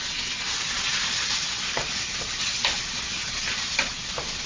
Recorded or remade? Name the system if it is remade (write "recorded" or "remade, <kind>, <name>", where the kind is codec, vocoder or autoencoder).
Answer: recorded